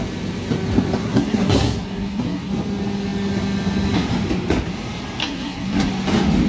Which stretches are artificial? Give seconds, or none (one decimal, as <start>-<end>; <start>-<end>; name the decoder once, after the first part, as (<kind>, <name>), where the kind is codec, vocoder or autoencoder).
1.0-2.5 (codec, SNAC); 5.2-5.9